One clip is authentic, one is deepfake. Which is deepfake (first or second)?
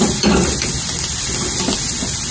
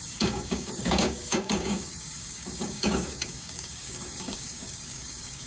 second